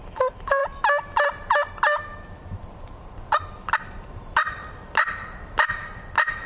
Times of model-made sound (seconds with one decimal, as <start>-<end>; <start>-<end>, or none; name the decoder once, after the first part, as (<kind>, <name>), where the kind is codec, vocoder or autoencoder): none